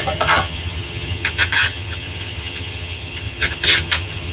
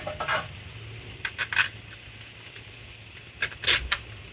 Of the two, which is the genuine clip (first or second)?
second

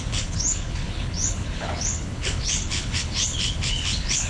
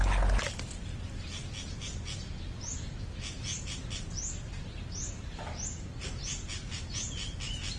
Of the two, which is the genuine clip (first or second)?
second